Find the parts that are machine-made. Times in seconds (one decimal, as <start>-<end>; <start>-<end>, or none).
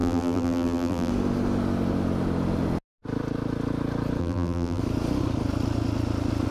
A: 0.0-1.1; 4.2-4.8